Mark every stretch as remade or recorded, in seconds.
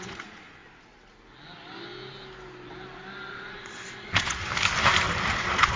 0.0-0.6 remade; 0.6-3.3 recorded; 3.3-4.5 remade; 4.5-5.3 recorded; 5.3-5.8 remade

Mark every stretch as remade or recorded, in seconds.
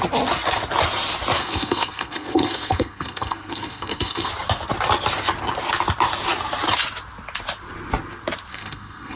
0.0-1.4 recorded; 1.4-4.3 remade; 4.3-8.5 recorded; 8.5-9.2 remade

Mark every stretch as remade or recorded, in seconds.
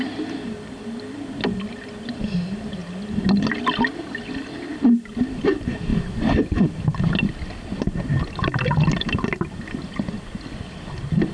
0.0-11.3 recorded